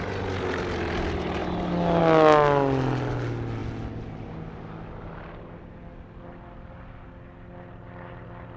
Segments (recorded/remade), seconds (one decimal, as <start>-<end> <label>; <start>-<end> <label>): 0.0-8.6 recorded